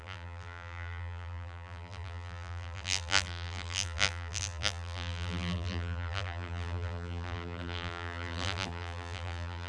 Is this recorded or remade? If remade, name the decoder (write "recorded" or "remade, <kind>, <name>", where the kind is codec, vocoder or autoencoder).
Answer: remade, vocoder, BigVGAN v2